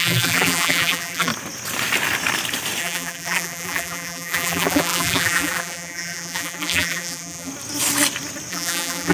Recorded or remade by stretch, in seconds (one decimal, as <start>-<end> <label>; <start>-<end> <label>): 0.0-1.3 remade; 1.3-2.8 recorded; 2.8-7.5 remade; 7.5-8.5 recorded; 8.5-9.1 remade